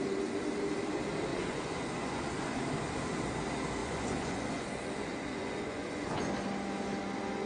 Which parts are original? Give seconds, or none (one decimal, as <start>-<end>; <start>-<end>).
0.0-1.3; 2.6-3.8; 6.3-7.5